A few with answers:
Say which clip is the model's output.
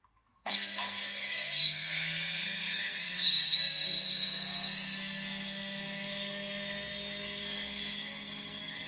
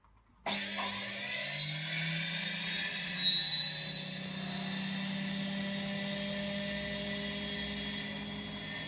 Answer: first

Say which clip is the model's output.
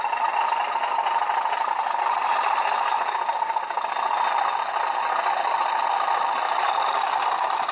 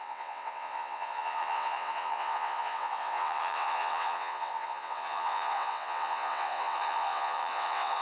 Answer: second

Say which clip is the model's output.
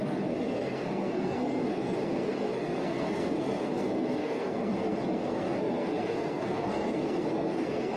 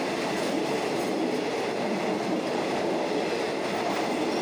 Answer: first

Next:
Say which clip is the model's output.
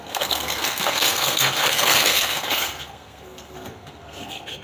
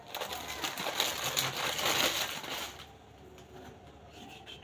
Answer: first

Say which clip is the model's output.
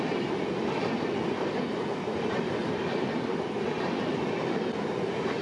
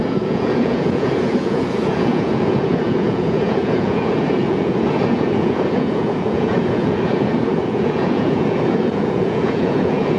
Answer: second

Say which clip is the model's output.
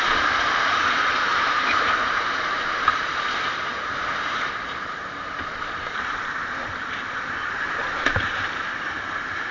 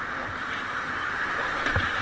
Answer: first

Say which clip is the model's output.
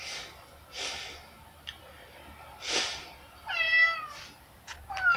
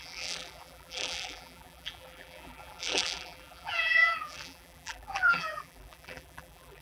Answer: second